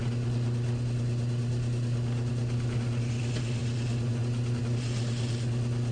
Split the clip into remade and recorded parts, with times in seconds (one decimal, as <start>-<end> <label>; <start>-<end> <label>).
0.0-5.9 recorded